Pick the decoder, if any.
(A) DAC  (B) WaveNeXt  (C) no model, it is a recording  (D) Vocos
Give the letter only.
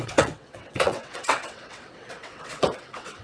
B